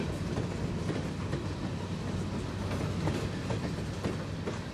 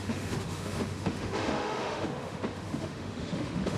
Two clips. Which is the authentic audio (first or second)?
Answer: first